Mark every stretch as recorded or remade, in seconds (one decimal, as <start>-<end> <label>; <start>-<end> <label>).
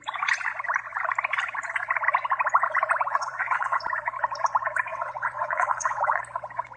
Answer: 0.0-3.1 recorded; 3.1-3.8 remade; 3.8-4.9 recorded; 4.9-6.2 remade; 6.2-6.8 recorded